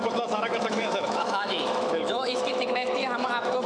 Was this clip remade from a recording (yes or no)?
yes